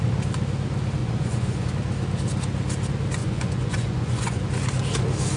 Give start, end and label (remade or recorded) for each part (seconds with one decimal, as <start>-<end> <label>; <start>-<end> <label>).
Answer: 0.0-1.0 recorded; 1.0-1.7 remade; 1.7-3.2 recorded; 3.2-4.4 remade; 4.4-5.4 recorded